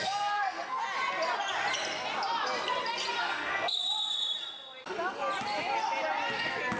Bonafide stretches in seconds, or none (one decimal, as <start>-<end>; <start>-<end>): 0.8-3.2; 3.8-6.8